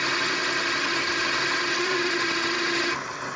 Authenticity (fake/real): real